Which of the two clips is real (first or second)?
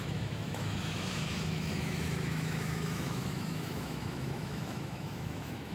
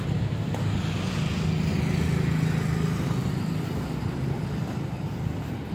second